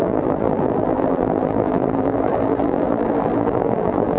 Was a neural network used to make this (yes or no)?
yes